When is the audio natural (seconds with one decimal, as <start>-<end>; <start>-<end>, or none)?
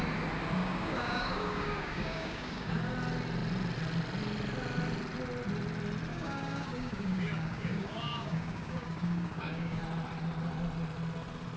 0.0-0.6; 2.7-6.1; 9.8-11.6